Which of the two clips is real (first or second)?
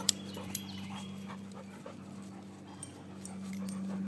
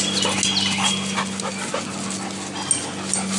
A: second